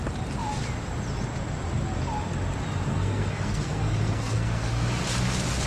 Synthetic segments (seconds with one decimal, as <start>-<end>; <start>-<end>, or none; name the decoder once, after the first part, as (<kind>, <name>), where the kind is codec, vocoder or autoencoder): 2.9-5.0 (codec, SNAC)